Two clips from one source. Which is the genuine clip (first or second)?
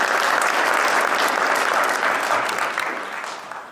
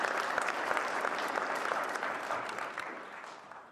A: first